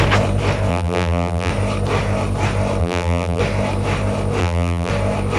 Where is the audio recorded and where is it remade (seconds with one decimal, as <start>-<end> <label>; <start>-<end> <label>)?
0.0-0.7 recorded; 0.7-1.5 remade; 1.5-2.8 recorded; 2.8-3.4 remade; 3.4-4.4 recorded; 4.4-4.9 remade; 4.9-5.4 recorded